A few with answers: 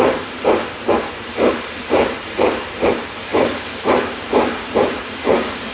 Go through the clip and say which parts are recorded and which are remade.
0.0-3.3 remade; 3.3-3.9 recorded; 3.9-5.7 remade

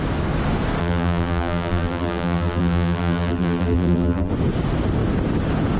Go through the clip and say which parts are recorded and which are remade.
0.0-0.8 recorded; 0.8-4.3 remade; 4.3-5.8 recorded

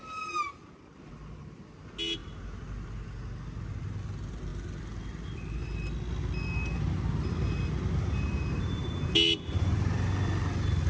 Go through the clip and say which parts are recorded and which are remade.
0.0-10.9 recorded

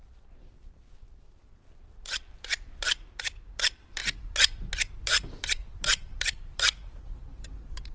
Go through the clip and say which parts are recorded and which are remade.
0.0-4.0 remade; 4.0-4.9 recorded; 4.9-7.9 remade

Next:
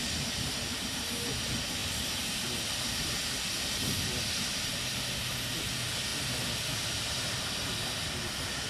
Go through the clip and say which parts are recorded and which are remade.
0.0-8.7 recorded

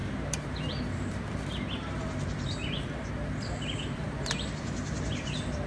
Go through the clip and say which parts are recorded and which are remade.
0.0-2.6 remade; 2.6-3.4 recorded; 3.4-5.7 remade

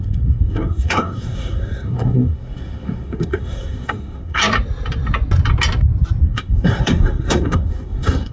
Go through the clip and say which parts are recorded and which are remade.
0.0-4.4 remade; 4.4-6.2 recorded; 6.2-8.3 remade